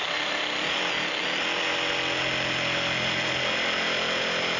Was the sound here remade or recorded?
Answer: recorded